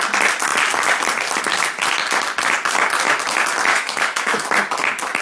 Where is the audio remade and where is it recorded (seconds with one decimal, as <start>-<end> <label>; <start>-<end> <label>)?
0.0-3.7 recorded; 3.7-4.5 remade; 4.5-5.2 recorded